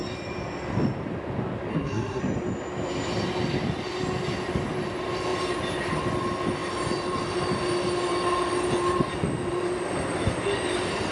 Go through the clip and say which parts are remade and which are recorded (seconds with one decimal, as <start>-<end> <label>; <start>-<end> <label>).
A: 0.0-1.7 recorded; 1.7-2.2 remade; 2.2-11.1 recorded